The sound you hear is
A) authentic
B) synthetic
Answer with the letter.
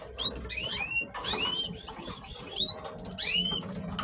A